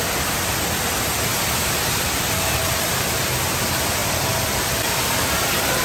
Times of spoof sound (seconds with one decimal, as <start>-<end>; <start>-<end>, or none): 1.3-3.2; 4.0-4.9